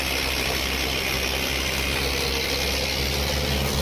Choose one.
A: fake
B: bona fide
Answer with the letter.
B